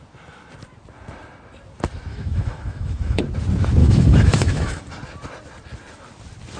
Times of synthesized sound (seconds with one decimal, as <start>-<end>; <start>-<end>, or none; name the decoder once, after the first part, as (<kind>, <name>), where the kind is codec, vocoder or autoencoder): 2.1-3.2 (autoencoder, DAC-VAE); 3.8-4.8